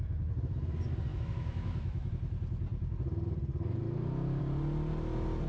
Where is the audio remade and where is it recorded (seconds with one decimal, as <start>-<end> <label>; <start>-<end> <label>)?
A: 0.0-1.1 recorded; 1.1-2.1 remade; 2.1-5.5 recorded